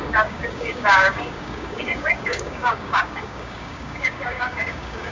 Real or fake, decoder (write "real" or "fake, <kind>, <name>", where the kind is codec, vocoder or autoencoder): fake, codec, DAC